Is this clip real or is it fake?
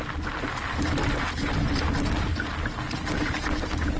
real